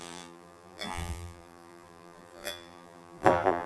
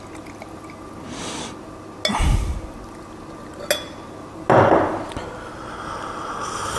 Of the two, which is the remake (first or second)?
first